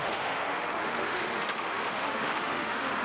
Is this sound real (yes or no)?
no